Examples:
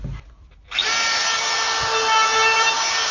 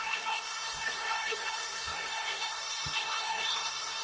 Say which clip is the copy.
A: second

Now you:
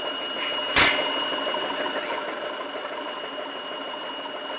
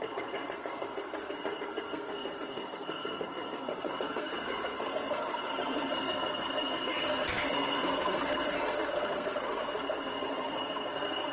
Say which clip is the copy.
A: second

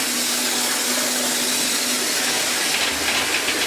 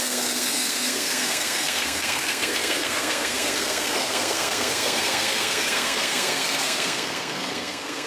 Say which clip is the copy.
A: second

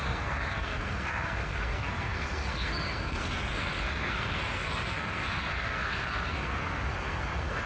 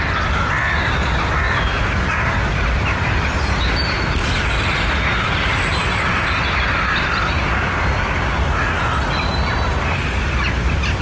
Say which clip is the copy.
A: first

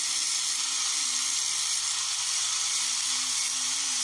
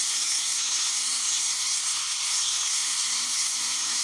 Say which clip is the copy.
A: second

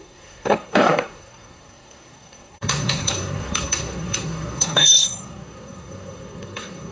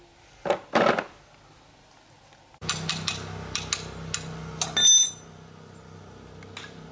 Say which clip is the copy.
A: first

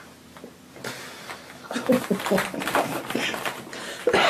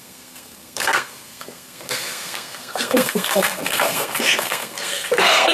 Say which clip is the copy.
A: second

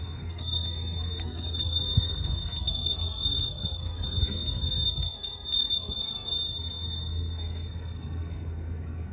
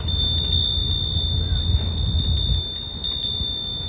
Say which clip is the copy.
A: first